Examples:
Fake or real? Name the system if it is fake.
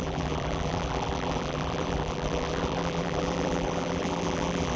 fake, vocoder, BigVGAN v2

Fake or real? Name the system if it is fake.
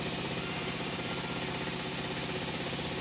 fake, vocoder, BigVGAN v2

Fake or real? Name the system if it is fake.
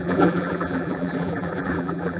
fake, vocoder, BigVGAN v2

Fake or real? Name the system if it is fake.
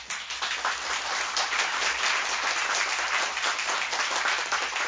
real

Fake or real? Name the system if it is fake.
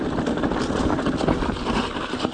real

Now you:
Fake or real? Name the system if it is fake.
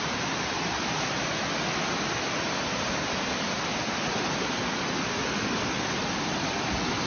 real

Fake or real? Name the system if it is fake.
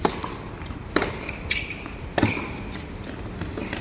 fake, vocoder, BigVGAN v2